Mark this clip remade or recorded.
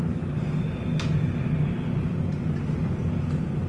recorded